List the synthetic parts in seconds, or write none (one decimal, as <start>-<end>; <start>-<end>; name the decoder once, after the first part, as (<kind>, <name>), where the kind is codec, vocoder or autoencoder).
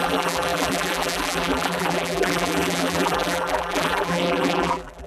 0.0-5.1 (vocoder, BigVGAN v2)